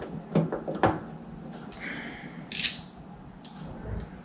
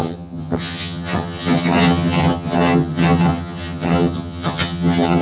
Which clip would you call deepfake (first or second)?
second